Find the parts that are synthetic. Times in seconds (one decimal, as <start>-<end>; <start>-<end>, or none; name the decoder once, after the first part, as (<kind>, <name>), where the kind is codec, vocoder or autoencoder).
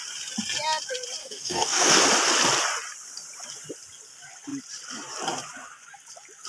1.2-2.0 (codec, DAC)